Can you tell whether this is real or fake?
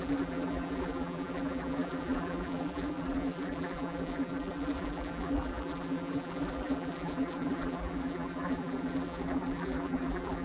fake